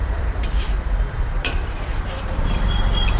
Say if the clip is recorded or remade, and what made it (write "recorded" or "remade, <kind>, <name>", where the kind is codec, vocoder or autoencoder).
remade, vocoder, BigVGAN v2